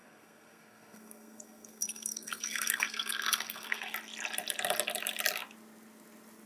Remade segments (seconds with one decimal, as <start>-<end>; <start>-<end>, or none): 0.0-3.9